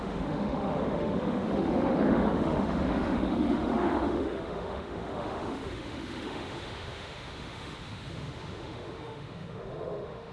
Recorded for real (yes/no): no